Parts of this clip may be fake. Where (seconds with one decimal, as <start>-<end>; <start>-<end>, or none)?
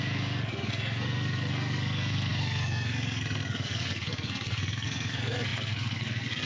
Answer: 0.0-6.5